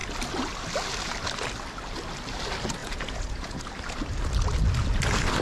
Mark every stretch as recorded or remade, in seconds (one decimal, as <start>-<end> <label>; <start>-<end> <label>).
0.0-2.8 recorded; 2.8-3.6 remade; 3.6-5.4 recorded